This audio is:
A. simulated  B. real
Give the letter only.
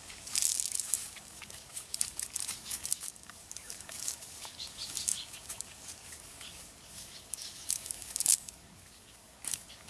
A